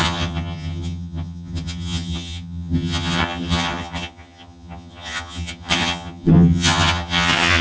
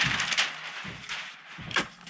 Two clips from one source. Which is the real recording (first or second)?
second